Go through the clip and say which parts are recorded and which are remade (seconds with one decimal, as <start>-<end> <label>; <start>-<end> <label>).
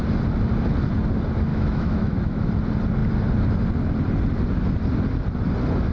0.0-1.5 recorded; 1.5-2.5 remade; 2.5-5.9 recorded